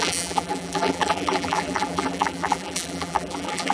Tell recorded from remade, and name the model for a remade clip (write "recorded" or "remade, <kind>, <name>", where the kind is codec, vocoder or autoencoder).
remade, vocoder, BigVGAN v2